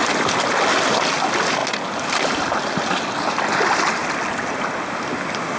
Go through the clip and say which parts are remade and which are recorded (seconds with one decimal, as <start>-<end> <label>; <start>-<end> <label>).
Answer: 0.0-5.6 recorded